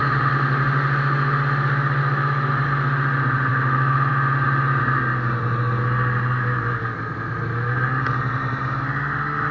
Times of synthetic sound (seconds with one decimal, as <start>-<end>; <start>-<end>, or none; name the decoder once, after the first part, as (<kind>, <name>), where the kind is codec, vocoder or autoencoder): 2.0-2.5 (autoencoder, DAC-VAE); 3.5-4.1